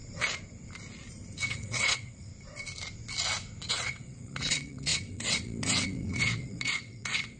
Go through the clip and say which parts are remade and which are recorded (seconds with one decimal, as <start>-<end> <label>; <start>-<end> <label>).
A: 0.0-1.5 recorded; 1.5-2.3 remade; 2.3-3.7 recorded; 3.7-7.4 remade